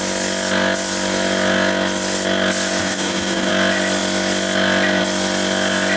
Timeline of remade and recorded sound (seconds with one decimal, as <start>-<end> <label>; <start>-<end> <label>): 0.0-2.8 recorded; 2.8-3.5 remade; 3.5-6.0 recorded